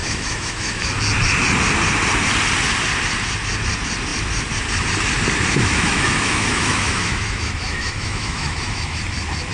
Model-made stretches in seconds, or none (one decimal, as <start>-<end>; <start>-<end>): 0.0-1.0; 5.6-9.0